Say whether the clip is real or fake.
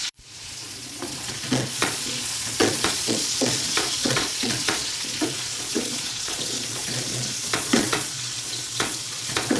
fake